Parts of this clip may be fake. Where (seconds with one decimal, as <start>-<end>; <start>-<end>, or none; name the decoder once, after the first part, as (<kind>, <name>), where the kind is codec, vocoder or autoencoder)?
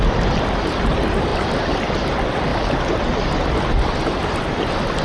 1.3-1.9 (vocoder, BigVGAN v2); 2.5-3.6